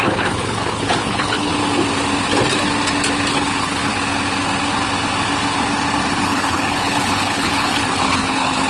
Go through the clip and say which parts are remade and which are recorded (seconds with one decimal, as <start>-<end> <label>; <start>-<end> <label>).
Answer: 0.0-1.5 remade; 1.5-3.3 recorded; 3.3-3.9 remade; 3.9-6.1 recorded; 6.1-8.7 remade